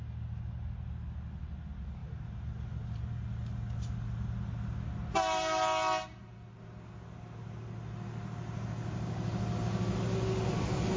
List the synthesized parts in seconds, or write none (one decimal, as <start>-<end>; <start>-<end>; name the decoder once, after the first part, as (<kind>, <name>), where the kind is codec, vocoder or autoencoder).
none